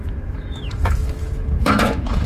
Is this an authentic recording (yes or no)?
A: no